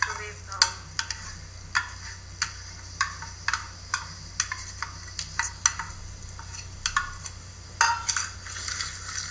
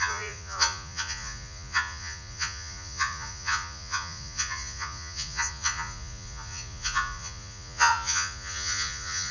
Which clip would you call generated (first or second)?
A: second